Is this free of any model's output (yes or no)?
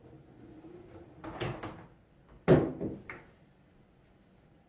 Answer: yes